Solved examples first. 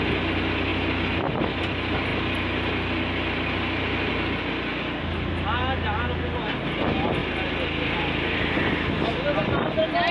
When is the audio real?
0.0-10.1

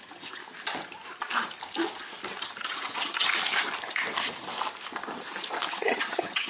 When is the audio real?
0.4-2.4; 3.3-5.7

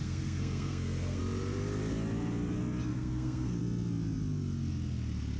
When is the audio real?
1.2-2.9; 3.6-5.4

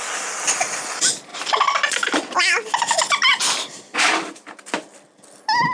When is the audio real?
0.0-1.3; 4.7-5.7

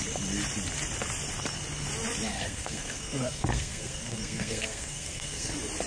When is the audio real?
0.0-2.3; 5.5-5.9